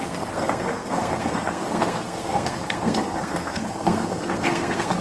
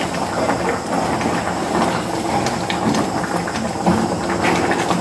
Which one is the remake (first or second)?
first